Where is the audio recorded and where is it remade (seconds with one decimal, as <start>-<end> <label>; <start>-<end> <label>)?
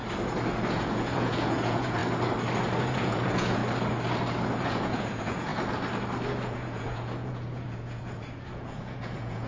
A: 0.0-0.7 recorded; 0.7-2.0 remade; 2.0-2.8 recorded; 2.8-3.6 remade; 3.6-4.6 recorded; 4.6-5.5 remade; 5.5-6.3 recorded; 6.3-9.5 remade